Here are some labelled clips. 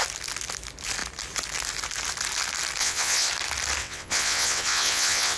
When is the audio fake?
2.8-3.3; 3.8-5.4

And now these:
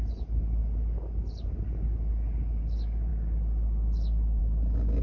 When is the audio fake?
none

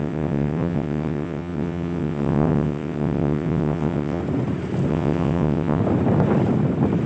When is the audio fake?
0.0-4.2; 4.9-5.8